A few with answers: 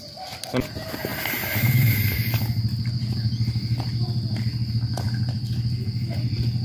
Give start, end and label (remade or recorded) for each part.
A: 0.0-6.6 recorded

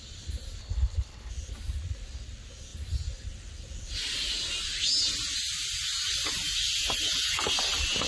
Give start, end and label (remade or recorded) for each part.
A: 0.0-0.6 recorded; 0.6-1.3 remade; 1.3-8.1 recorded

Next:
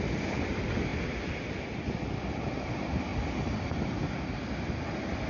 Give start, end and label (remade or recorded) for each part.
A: 0.0-3.1 recorded; 3.1-4.4 remade; 4.4-5.3 recorded

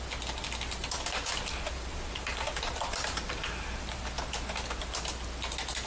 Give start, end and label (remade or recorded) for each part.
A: 0.0-0.8 recorded; 0.8-4.0 remade; 4.0-5.9 recorded

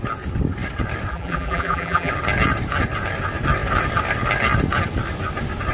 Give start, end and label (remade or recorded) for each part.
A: 0.0-1.1 recorded; 1.1-2.1 remade; 2.1-5.7 recorded

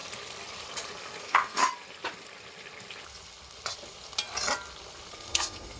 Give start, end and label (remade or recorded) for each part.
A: 0.0-1.2 recorded; 1.2-1.6 remade; 1.6-5.1 recorded; 5.1-5.8 remade